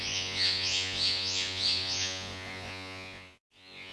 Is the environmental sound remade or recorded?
remade